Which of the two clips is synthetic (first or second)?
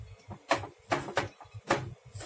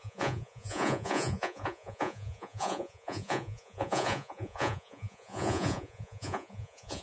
second